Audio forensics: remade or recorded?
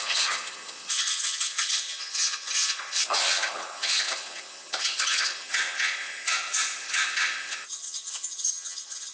remade